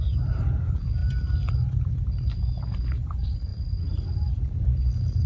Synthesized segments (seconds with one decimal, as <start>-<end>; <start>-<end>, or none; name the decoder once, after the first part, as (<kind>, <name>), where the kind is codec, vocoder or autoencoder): none